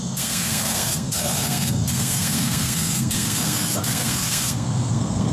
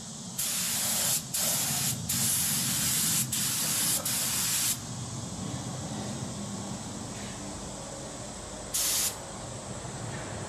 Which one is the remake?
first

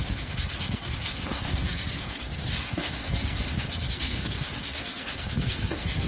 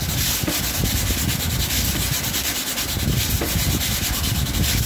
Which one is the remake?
first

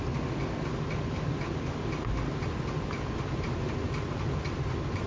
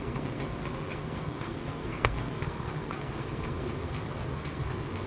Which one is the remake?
second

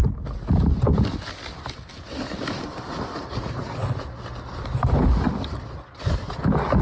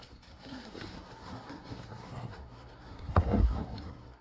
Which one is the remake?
second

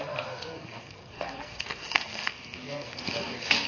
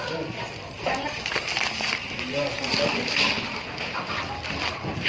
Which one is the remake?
first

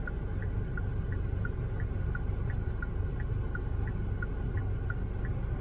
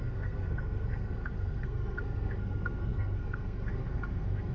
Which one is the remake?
second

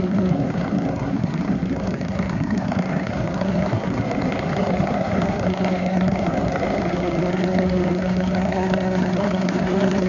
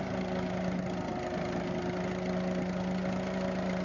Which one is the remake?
first